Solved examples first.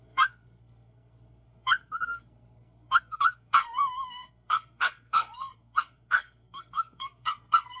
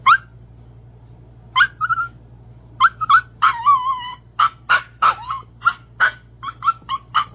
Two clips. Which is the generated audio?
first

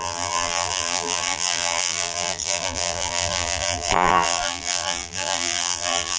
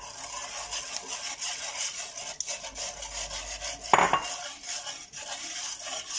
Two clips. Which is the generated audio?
first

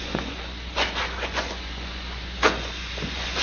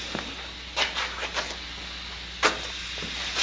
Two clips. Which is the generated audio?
first